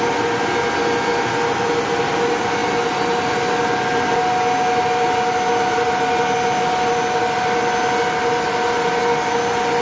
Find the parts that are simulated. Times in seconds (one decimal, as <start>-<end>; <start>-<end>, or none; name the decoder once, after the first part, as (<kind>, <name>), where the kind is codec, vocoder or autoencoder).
none